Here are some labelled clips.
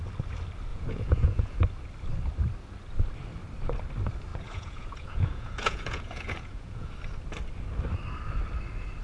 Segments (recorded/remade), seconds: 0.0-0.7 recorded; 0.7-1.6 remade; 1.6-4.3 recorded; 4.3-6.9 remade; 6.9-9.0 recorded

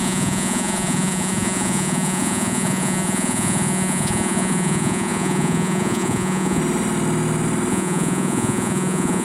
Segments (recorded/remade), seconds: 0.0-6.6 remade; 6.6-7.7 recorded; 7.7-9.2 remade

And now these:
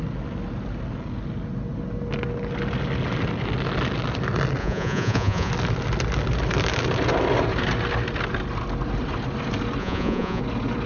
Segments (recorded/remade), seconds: 0.0-4.6 recorded; 4.6-5.5 remade; 5.5-9.8 recorded; 9.8-10.4 remade; 10.4-10.9 recorded